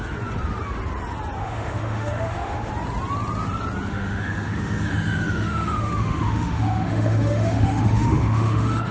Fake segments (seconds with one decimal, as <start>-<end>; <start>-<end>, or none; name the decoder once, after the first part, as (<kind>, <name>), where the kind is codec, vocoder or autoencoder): 1.4-2.7 (autoencoder, DAC-VAE); 3.9-8.9